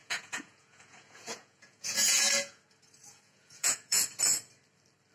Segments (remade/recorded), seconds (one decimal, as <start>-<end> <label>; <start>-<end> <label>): 0.0-2.6 remade; 2.6-3.0 recorded; 3.0-4.0 remade; 4.0-5.1 recorded